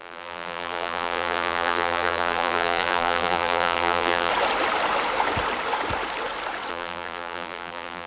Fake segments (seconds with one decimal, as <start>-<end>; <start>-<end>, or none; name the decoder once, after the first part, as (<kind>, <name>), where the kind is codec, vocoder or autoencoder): 0.0-4.3 (vocoder, BigVGAN v2); 6.7-8.1